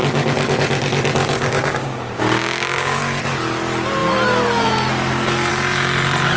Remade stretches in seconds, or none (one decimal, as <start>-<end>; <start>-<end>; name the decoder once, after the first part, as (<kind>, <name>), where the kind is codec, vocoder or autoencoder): 1.2-3.0 (codec, DAC)